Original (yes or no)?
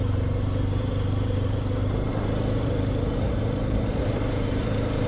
no